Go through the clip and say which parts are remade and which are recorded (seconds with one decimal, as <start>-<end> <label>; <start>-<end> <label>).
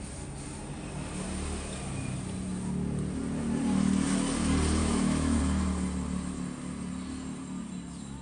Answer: 0.0-4.8 recorded; 4.8-5.4 remade; 5.4-8.2 recorded